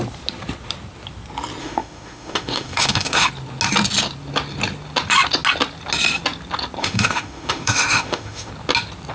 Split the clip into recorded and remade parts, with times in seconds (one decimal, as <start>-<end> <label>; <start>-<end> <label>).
0.0-1.6 recorded; 1.6-3.3 remade; 3.3-6.8 recorded; 6.8-8.5 remade; 8.5-9.1 recorded